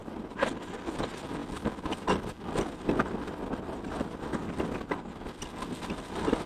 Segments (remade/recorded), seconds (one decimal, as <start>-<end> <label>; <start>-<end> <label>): 0.0-6.5 recorded